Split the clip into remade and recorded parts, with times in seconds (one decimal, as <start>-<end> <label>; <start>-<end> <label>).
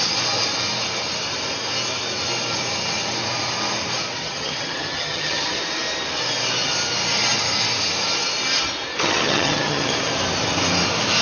0.0-4.2 recorded; 4.2-5.6 remade; 5.6-8.9 recorded; 8.9-9.9 remade; 9.9-11.2 recorded